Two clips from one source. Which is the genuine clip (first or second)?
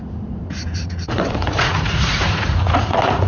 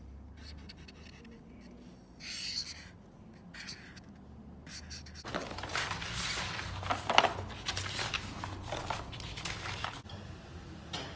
second